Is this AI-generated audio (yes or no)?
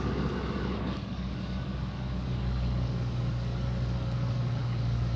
yes